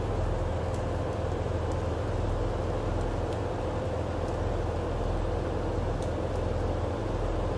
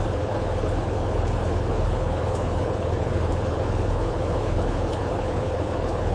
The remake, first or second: second